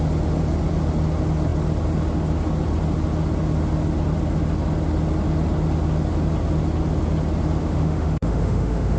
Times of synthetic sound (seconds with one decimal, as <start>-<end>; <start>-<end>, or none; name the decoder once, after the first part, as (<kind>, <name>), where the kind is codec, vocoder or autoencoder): 7.6-9.0 (autoencoder, DAC-VAE)